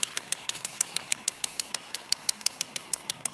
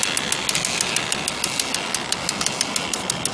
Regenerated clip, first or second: first